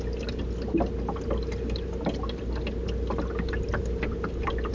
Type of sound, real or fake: real